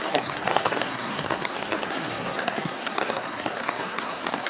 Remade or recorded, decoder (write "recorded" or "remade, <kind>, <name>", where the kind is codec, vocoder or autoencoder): remade, codec, SNAC